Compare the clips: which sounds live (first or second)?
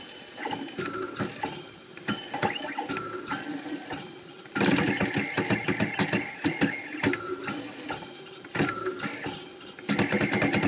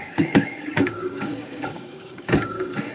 first